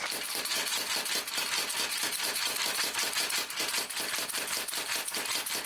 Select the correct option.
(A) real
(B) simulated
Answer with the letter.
A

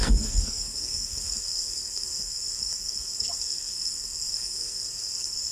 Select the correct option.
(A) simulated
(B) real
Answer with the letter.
A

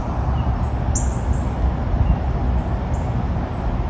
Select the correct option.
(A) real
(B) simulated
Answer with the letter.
A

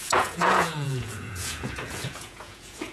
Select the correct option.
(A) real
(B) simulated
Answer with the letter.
B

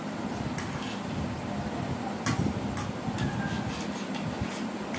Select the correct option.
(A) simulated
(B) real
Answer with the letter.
B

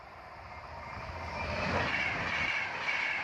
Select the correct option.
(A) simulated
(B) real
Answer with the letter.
B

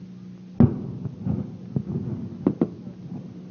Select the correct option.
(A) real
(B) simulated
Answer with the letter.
A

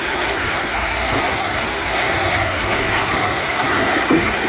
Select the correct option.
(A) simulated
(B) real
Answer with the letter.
A